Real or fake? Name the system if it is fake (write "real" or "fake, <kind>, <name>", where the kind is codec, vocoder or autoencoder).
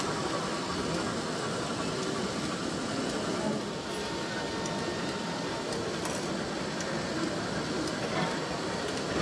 real